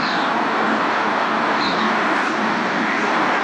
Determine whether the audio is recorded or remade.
remade